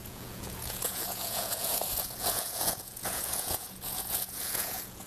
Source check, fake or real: fake